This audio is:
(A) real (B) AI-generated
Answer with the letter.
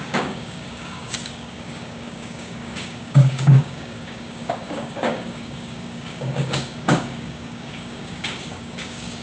B